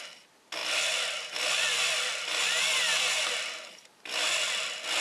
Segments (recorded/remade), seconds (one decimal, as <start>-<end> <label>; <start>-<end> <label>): 0.0-5.0 recorded